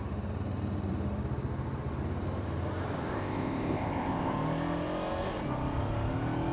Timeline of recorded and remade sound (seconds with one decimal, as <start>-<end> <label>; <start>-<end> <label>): 0.0-3.1 recorded; 3.1-4.3 remade; 4.3-6.5 recorded